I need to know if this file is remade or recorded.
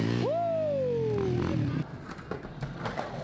recorded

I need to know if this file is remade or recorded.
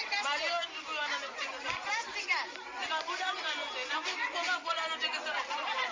recorded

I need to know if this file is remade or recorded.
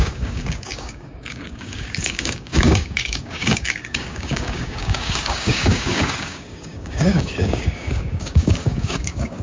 remade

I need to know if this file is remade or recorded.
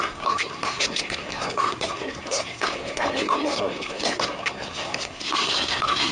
remade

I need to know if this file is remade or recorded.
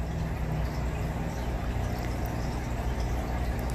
recorded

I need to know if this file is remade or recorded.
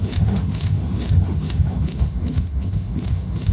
remade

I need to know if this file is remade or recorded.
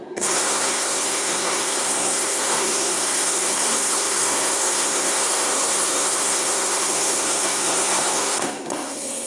remade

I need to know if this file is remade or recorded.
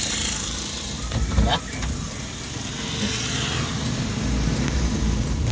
recorded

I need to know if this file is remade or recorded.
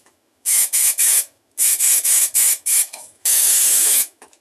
remade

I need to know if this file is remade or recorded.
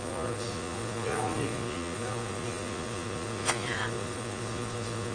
remade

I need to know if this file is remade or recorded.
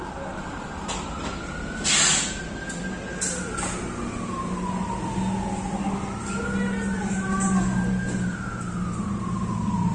recorded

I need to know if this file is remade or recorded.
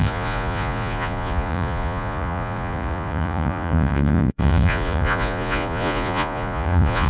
remade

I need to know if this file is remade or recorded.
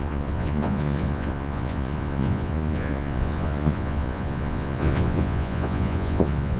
remade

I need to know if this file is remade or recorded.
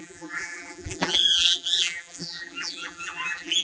remade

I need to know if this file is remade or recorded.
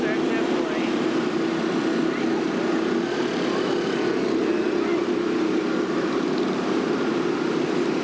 recorded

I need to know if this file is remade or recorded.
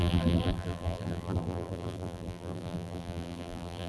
remade